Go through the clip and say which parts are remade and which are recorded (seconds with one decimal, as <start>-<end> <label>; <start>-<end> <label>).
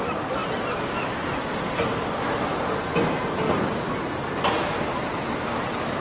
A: 0.0-6.0 recorded